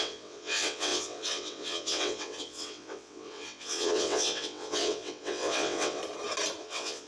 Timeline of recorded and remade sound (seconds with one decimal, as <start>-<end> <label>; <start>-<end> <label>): 0.0-6.0 remade; 6.0-6.6 recorded; 6.6-7.1 remade